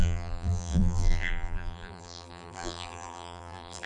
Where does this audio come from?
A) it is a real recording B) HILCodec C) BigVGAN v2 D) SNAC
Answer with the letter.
C